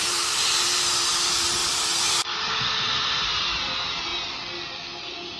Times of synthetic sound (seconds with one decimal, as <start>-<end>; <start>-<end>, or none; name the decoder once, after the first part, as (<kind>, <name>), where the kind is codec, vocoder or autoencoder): 0.0-4.1 (vocoder, BigVGAN v2)